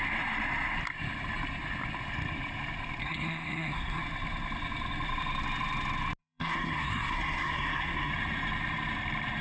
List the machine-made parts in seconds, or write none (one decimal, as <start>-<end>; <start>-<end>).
3.0-4.0; 6.2-8.1